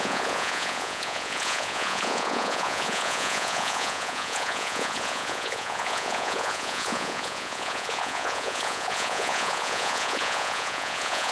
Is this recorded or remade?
remade